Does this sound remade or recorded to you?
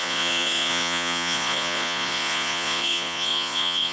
remade